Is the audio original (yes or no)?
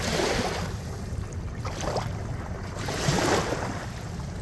yes